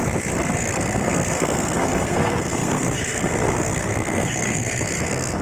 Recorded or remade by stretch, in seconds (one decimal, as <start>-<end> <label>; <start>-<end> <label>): 0.0-0.6 recorded; 0.6-5.4 remade